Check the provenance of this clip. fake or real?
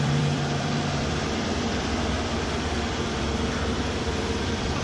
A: fake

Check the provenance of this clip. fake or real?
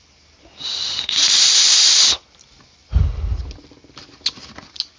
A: real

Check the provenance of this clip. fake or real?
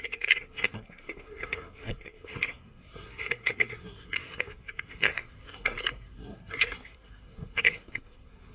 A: fake